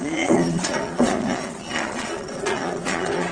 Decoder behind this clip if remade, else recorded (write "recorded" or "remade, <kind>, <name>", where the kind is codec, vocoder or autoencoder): remade, vocoder, Vocos